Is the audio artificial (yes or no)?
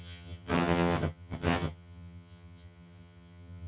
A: yes